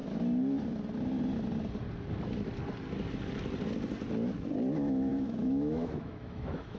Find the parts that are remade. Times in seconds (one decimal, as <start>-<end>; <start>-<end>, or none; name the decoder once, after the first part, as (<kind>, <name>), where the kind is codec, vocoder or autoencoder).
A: 5.1-6.8 (autoencoder, DAC-VAE)